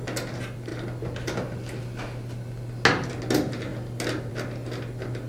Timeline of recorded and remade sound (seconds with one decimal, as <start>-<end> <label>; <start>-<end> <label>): 0.0-5.3 recorded